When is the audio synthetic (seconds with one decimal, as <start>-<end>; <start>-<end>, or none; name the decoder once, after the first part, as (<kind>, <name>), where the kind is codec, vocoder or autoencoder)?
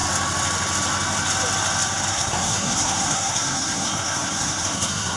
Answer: 2.1-5.2 (codec, SNAC)